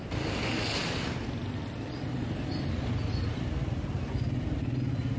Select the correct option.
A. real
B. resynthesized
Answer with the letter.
A